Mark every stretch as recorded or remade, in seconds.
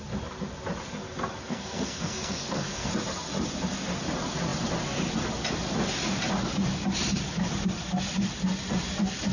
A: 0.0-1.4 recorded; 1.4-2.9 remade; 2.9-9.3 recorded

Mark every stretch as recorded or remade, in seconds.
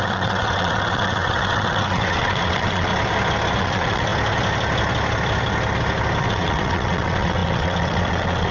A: 0.0-2.9 remade; 2.9-3.6 recorded; 3.6-4.1 remade; 4.1-6.2 recorded; 6.2-8.5 remade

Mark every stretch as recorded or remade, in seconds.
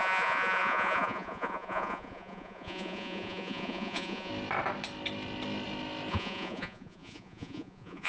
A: 0.0-4.3 remade; 4.3-6.1 recorded; 6.1-8.1 remade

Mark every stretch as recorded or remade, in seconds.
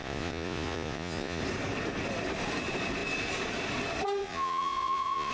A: 0.0-1.4 remade; 1.4-4.2 recorded; 4.2-5.3 remade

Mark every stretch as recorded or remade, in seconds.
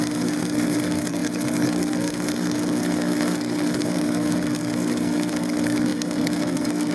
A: 0.0-6.9 remade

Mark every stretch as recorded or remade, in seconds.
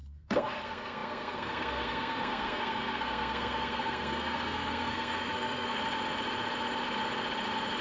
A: 0.0-5.8 remade; 5.8-7.8 recorded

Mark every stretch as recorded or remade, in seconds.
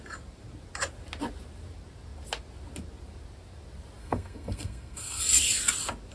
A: 0.0-4.0 recorded; 4.0-5.2 remade; 5.2-6.1 recorded